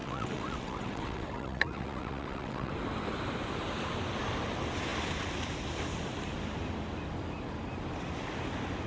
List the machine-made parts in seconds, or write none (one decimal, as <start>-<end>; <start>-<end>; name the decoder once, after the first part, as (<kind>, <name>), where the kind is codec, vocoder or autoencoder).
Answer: 0.0-2.7 (vocoder, WaveNeXt)